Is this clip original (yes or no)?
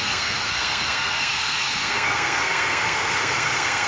no